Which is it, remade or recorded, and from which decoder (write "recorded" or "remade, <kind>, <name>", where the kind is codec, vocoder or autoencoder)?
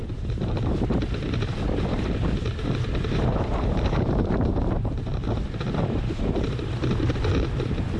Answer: remade, vocoder, BigVGAN v2